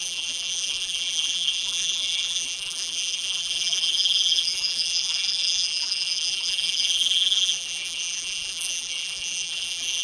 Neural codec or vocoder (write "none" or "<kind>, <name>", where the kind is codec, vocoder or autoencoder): vocoder, BigVGAN v2